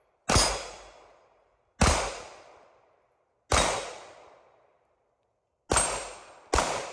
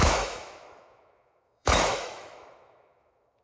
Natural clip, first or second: first